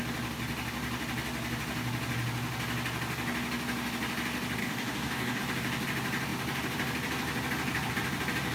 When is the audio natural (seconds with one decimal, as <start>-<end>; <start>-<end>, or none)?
0.0-4.6; 5.4-8.5